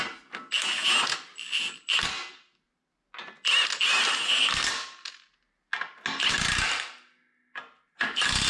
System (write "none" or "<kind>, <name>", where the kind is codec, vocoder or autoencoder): none